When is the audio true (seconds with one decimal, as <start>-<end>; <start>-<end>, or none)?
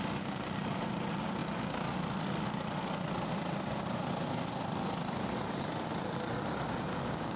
0.0-6.9